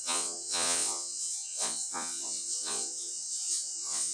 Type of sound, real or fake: fake